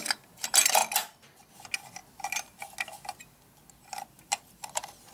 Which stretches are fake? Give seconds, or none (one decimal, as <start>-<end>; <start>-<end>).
none